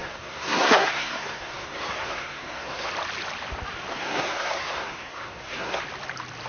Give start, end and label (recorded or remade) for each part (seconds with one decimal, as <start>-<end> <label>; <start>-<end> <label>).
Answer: 0.0-2.9 remade; 2.9-3.9 recorded; 3.9-5.8 remade; 5.8-6.5 recorded